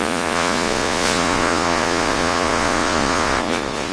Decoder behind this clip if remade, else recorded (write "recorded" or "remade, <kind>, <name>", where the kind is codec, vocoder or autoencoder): remade, vocoder, Vocos